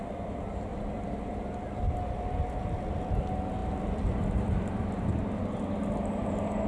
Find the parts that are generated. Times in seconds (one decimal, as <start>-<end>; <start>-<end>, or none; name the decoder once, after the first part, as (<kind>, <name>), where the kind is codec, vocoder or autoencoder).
0.7-3.2 (vocoder, BigVGAN v2); 3.6-5.0